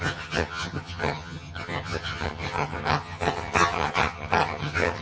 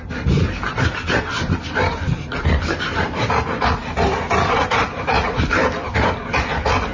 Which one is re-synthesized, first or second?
first